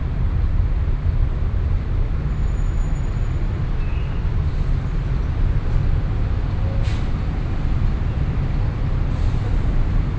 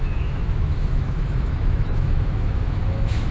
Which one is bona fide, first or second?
first